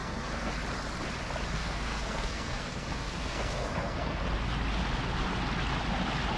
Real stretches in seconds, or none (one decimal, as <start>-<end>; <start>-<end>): 0.5-1.6; 4.2-6.4